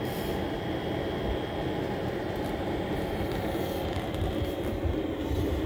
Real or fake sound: real